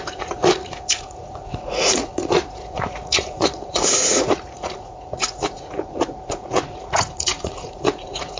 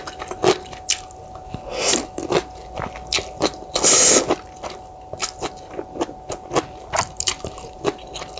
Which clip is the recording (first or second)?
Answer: second